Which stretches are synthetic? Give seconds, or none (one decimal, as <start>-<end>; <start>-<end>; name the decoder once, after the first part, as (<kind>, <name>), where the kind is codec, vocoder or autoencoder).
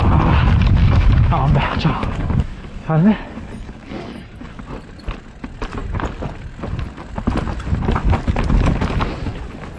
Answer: 0.8-4.6 (codec, DAC)